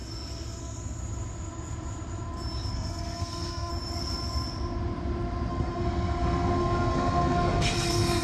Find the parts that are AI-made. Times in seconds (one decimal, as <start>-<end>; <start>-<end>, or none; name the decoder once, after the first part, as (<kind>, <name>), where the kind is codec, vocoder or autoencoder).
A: 0.6-1.0 (codec, SNAC); 2.7-3.7; 5.5-8.2